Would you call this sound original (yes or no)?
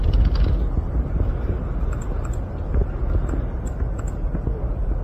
yes